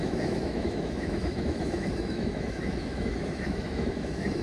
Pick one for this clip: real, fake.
fake